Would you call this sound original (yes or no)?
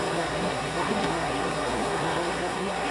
no